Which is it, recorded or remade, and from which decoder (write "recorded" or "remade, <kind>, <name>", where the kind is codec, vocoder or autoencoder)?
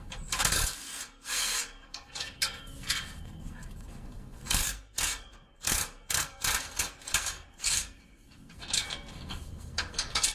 remade, codec, SNAC